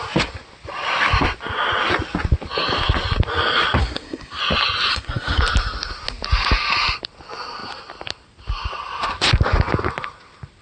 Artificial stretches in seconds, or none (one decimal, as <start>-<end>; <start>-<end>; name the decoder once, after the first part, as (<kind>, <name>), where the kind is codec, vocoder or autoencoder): 3.8-4.4 (codec, SNAC); 4.9-5.4